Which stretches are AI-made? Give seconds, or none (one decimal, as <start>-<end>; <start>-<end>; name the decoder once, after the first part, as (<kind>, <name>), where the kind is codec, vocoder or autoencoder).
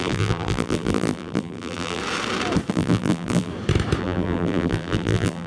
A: 0.0-2.0 (vocoder, BigVGAN v2); 2.7-3.5; 4.0-5.5